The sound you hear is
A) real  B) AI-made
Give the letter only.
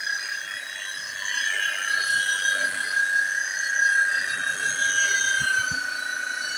A